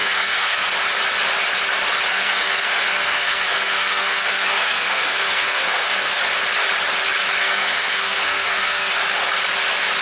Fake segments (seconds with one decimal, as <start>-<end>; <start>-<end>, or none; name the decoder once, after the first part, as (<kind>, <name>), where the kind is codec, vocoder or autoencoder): 0.0-0.7 (codec, SNAC); 2.1-6.2; 7.4-8.9